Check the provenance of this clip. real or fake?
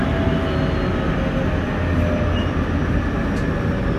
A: real